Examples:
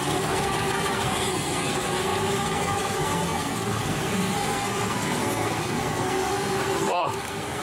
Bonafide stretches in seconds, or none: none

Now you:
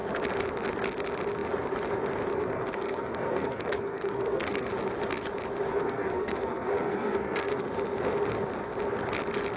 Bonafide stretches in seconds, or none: 0.0-2.3; 4.7-5.7; 7.6-9.6